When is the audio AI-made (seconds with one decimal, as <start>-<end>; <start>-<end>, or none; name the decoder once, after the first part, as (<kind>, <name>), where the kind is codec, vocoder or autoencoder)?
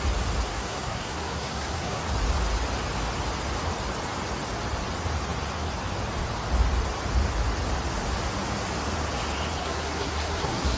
0.5-2.0 (codec, SNAC); 9.6-10.8